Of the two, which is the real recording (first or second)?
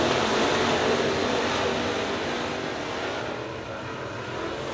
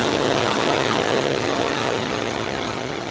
first